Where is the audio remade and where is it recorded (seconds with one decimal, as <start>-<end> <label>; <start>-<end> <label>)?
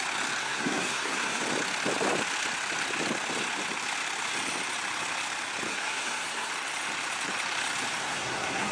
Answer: 0.0-0.4 recorded; 0.4-1.4 remade; 1.4-5.7 recorded; 5.7-6.5 remade; 6.5-8.0 recorded; 8.0-8.7 remade